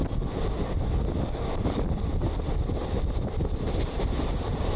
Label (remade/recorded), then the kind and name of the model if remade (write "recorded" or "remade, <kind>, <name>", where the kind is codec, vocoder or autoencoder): recorded